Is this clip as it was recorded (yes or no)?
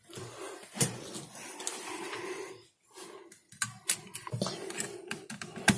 yes